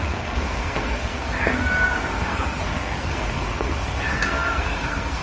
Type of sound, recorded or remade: remade